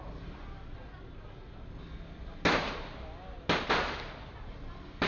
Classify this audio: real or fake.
real